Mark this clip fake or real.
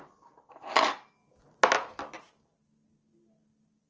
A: real